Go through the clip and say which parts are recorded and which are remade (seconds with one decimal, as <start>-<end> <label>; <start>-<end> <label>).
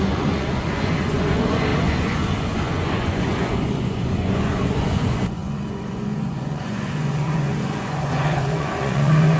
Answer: 0.0-9.4 remade